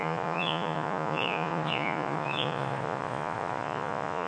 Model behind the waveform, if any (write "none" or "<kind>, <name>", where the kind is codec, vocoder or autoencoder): vocoder, Vocos